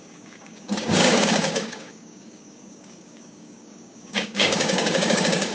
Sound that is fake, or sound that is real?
fake